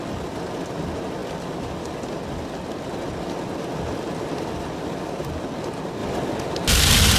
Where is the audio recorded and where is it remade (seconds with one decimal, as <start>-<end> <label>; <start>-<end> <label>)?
0.0-7.2 recorded